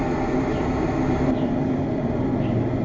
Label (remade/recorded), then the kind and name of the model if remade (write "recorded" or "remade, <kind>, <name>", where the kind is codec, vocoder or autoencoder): recorded